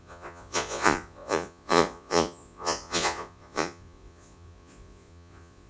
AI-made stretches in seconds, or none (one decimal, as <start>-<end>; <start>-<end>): 0.0-5.7